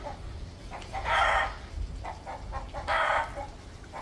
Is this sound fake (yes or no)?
no